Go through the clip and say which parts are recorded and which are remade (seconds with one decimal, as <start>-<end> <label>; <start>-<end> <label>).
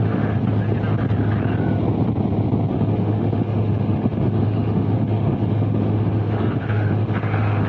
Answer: 0.0-0.4 remade; 0.4-2.7 recorded; 2.7-7.7 remade